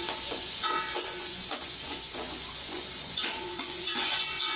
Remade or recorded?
remade